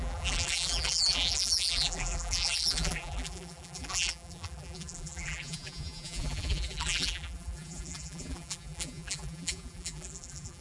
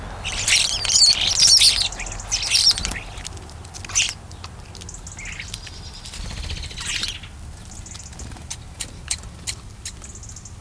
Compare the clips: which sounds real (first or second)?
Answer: second